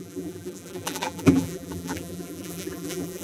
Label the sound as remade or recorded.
remade